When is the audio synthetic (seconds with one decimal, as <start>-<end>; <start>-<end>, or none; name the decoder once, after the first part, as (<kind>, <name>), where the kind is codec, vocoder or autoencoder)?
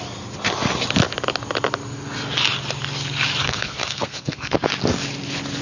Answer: 3.4-4.5 (codec, SNAC)